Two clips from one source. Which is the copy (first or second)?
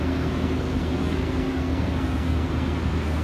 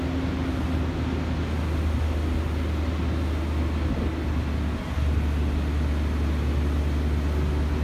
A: first